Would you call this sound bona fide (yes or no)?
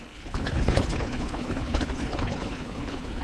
no